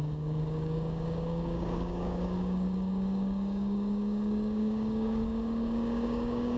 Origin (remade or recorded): remade